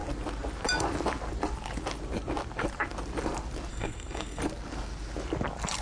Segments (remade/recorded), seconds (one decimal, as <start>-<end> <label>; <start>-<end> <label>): 0.0-3.7 recorded; 3.7-4.4 remade; 4.4-5.8 recorded